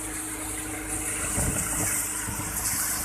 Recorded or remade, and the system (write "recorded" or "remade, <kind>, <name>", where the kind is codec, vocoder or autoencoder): recorded